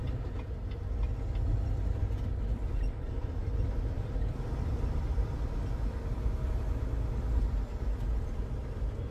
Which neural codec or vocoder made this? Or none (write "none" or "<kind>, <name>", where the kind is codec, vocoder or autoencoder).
none